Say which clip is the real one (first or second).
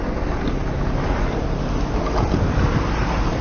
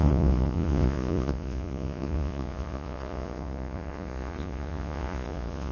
first